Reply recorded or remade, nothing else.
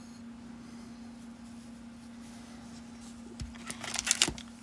recorded